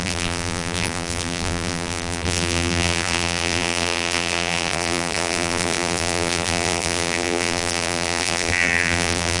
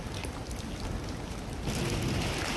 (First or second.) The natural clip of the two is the second